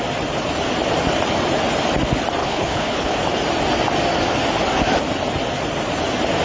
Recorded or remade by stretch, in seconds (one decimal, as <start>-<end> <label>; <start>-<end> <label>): 0.0-2.4 recorded; 2.4-3.1 remade; 3.1-6.4 recorded